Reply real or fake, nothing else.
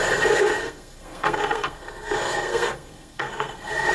fake